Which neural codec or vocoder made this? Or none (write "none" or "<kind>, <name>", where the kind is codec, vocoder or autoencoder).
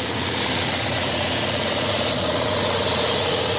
vocoder, Vocos